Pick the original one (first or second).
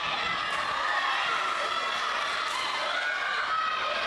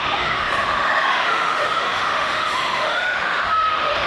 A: first